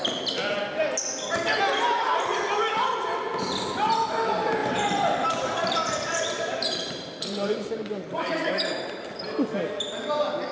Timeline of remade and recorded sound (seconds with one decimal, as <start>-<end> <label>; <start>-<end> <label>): 0.0-4.6 recorded; 4.6-8.5 remade; 8.5-10.5 recorded